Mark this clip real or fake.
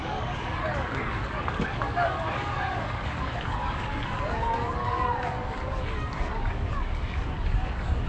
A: fake